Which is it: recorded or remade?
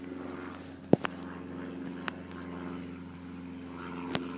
recorded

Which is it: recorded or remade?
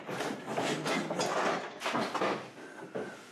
recorded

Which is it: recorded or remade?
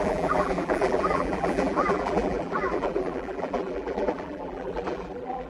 remade